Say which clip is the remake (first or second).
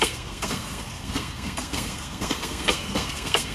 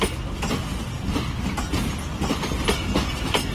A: first